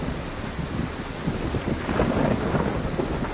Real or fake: real